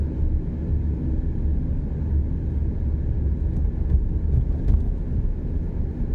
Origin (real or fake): real